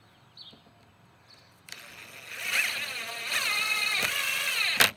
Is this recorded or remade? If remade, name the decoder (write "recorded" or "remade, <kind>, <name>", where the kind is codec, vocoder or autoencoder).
recorded